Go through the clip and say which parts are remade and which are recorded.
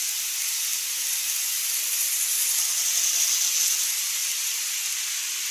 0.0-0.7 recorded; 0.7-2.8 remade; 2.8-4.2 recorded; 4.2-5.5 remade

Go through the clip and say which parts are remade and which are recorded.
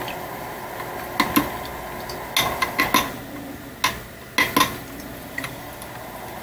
0.0-6.4 recorded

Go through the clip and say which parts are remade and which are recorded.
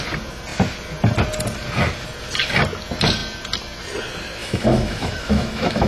0.0-4.4 recorded; 4.4-5.9 remade